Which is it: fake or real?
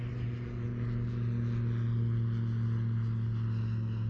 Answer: real